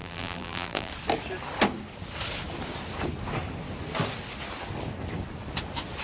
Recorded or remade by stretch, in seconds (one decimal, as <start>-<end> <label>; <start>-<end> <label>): 0.0-0.9 remade; 0.9-6.0 recorded